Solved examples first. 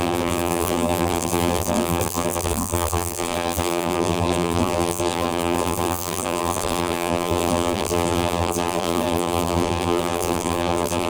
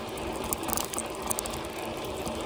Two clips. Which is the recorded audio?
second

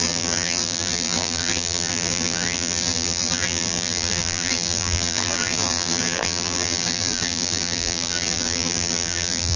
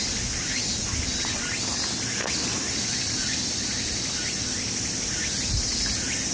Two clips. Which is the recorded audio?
second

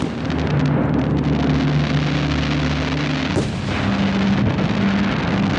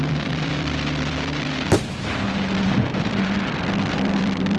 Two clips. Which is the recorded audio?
first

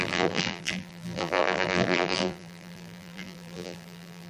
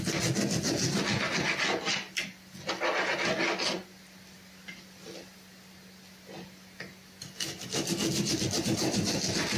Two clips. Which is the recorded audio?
second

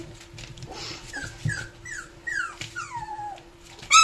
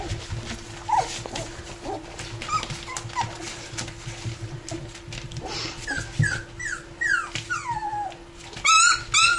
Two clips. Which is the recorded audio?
second